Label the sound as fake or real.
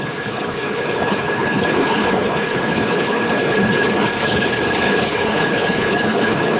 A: fake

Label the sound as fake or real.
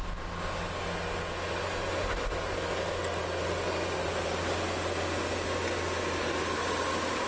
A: real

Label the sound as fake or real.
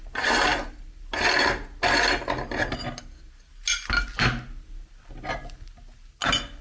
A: real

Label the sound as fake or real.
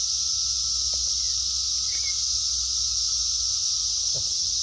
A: real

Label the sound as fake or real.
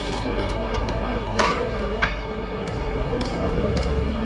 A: fake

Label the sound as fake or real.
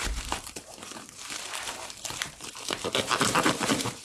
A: fake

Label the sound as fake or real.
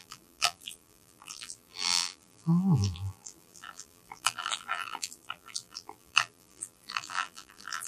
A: fake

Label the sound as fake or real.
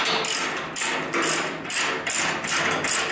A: real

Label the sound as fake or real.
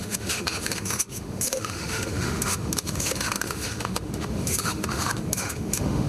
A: fake